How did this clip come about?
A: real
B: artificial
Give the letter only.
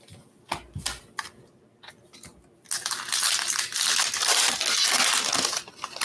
A